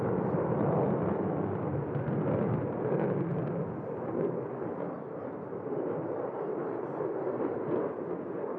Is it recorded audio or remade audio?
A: recorded